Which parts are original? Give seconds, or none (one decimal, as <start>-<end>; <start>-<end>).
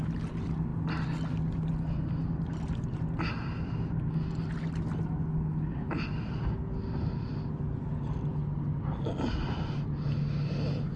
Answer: 0.0-11.0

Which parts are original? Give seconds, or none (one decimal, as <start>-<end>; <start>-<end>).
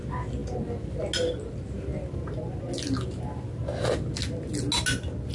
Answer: 0.0-5.3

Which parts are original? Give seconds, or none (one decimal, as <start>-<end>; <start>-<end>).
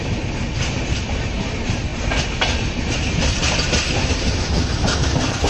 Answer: 0.0-5.5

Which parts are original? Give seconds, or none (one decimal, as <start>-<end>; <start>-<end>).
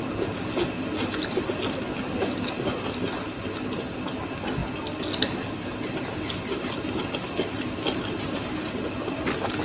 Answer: 0.0-9.6